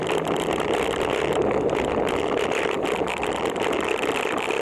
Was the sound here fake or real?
fake